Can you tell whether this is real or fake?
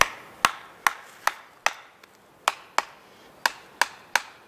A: real